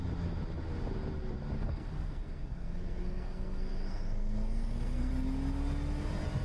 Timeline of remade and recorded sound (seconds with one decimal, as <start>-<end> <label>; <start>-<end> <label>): 0.0-1.6 recorded; 1.6-5.1 remade; 5.1-6.4 recorded